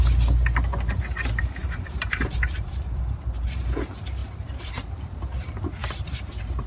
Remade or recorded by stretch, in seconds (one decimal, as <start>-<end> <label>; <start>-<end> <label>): 0.0-1.6 recorded; 1.6-3.2 remade; 3.2-4.2 recorded; 4.2-4.7 remade; 4.7-5.8 recorded; 5.8-6.3 remade; 6.3-6.7 recorded